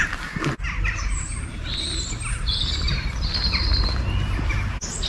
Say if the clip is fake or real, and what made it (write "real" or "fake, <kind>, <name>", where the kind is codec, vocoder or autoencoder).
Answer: real